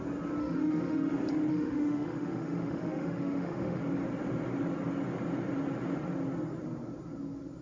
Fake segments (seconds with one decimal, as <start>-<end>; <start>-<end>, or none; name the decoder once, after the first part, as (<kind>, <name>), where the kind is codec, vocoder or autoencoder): 0.4-1.1 (autoencoder, DAC-VAE); 1.5-3.8